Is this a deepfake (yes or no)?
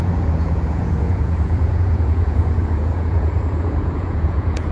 yes